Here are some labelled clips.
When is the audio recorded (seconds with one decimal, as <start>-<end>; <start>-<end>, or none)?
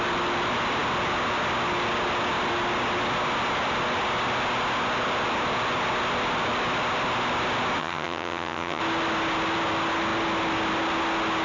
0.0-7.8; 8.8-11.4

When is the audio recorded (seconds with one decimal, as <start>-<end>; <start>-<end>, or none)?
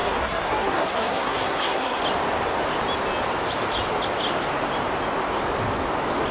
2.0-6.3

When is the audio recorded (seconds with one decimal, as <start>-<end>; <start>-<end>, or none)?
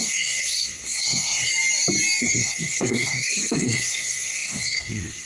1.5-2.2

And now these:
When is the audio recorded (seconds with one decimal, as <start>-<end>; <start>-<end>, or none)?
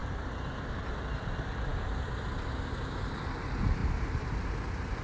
0.9-3.8; 4.5-5.0